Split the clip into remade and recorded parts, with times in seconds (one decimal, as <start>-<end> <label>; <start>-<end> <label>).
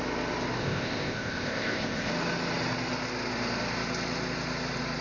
0.0-0.6 recorded; 0.6-2.1 remade; 2.1-5.0 recorded